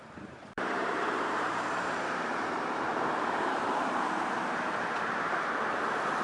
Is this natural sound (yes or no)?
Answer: no